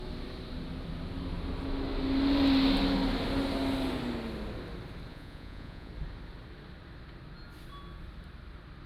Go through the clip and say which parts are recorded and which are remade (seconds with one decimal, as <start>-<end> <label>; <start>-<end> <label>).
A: 0.0-5.1 recorded; 5.1-5.9 remade; 5.9-8.9 recorded